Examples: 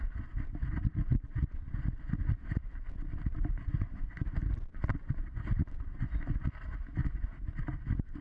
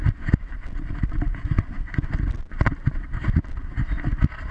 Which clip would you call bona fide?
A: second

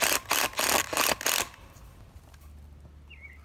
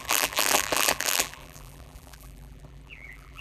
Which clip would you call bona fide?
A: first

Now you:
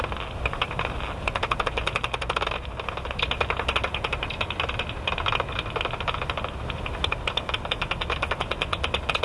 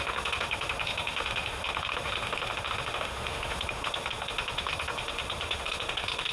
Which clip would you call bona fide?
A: first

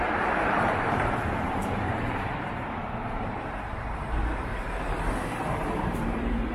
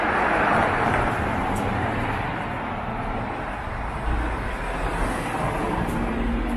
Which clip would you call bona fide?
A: second